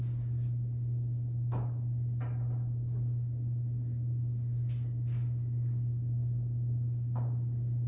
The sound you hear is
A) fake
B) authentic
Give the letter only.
B